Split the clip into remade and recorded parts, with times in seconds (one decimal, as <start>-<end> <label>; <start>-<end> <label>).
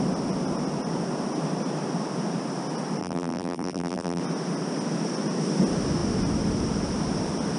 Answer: 0.0-3.0 recorded; 3.0-4.2 remade; 4.2-7.6 recorded